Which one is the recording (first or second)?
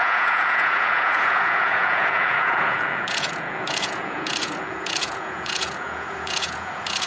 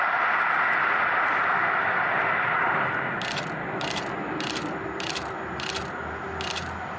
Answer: second